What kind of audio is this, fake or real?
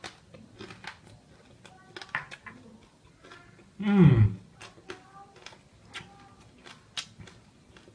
real